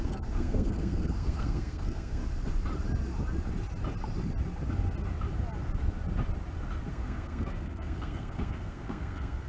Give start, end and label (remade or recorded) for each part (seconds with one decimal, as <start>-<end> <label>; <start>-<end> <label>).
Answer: 0.0-2.2 remade; 2.2-6.9 recorded; 6.9-9.5 remade